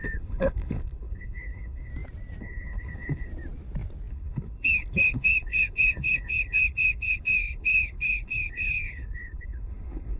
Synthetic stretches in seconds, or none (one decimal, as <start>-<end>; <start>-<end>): 0.0-1.9; 2.4-3.3; 4.1-10.2